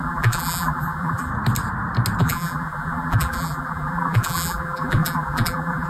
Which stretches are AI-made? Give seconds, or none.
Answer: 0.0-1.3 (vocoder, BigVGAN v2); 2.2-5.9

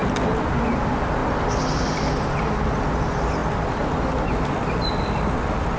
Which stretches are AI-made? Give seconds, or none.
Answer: none

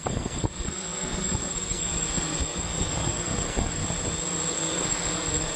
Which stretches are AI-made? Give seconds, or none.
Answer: 0.0-3.8 (codec, SNAC); 4.5-5.6

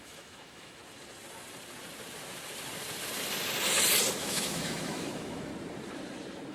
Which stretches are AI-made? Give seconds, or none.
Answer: 0.0-0.8 (autoencoder, DAC-VAE); 4.2-5.5

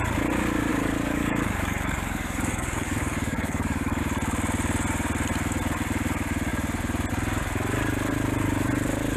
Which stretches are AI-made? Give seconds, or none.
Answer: 0.7-4.0 (codec, DAC)

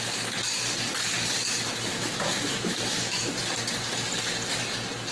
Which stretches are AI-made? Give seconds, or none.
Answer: 1.9-3.4 (autoencoder, DAC-VAE)

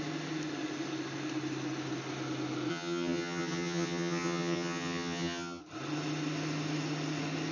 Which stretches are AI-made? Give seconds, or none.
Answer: 2.7-5.6 (vocoder, HiFi-GAN)

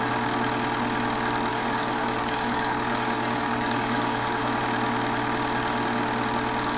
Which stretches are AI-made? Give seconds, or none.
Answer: 1.5-4.6 (codec, DAC)